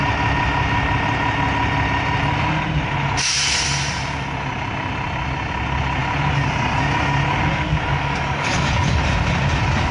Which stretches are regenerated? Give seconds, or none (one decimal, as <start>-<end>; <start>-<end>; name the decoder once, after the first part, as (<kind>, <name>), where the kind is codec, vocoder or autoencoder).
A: 7.9-9.0 (codec, DAC)